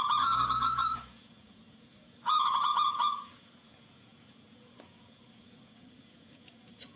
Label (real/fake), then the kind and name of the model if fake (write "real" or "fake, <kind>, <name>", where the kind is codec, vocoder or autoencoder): fake, vocoder, Vocos